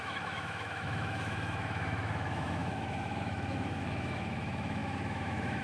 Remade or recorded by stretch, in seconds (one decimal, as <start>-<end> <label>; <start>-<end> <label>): 0.0-5.6 remade